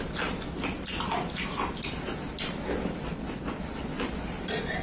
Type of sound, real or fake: real